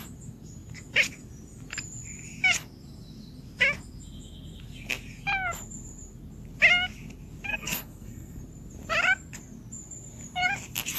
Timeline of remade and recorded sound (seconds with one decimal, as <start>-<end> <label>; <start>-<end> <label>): 0.0-7.5 recorded; 7.5-8.4 remade; 8.4-11.0 recorded